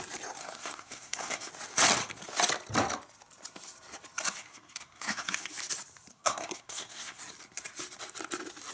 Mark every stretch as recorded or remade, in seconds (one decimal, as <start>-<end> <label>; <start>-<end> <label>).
0.0-0.4 recorded; 0.4-1.5 remade; 1.5-4.5 recorded; 4.5-5.5 remade; 5.5-6.1 recorded; 6.1-7.2 remade; 7.2-8.7 recorded